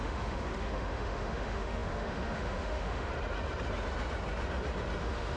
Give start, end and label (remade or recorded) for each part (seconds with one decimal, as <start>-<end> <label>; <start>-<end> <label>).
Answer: 0.0-3.1 remade; 3.1-5.0 recorded; 5.0-5.4 remade